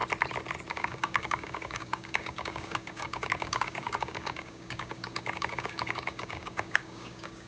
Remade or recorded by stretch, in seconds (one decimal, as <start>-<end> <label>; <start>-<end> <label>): 0.0-0.7 recorded; 0.7-7.5 remade